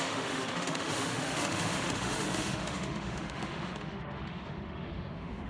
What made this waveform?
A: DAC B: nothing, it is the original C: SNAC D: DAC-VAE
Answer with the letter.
D